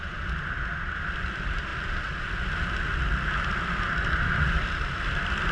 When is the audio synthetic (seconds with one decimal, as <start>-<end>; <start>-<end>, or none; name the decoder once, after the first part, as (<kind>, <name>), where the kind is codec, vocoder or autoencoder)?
0.7-1.7 (vocoder, BigVGAN v2); 3.9-5.5